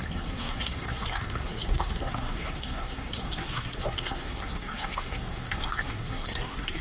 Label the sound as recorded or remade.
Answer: remade